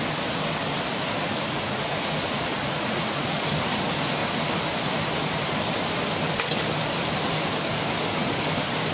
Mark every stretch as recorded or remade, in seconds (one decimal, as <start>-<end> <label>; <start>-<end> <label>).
0.0-1.2 recorded; 1.2-3.5 remade; 3.5-8.9 recorded